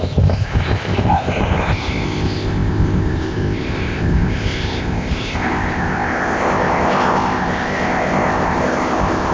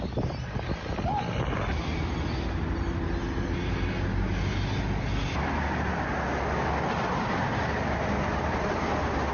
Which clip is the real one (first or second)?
second